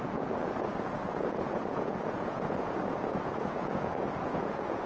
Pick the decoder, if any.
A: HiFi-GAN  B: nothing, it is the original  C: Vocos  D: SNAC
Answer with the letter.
C